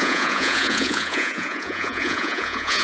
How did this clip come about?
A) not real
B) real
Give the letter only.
A